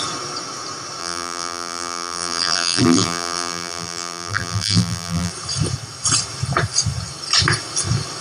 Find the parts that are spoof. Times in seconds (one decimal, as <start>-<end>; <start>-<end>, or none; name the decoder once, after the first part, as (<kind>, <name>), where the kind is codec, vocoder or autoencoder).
1.0-5.3 (vocoder, BigVGAN v2)